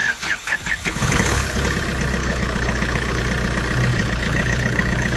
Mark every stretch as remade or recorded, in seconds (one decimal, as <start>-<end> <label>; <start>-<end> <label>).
0.0-1.6 remade; 1.6-2.2 recorded; 2.2-3.2 remade; 3.2-3.9 recorded; 3.9-5.2 remade